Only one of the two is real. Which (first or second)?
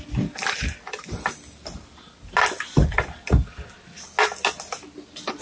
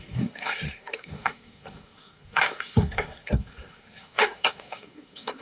first